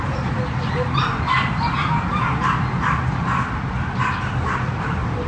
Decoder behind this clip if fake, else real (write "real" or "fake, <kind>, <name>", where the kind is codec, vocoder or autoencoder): real